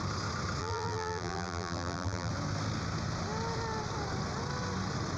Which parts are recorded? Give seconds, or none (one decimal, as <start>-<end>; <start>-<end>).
0.0-0.6; 2.3-5.2